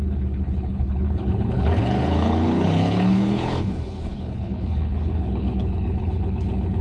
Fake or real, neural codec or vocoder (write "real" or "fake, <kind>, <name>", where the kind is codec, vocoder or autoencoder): fake, codec, HILCodec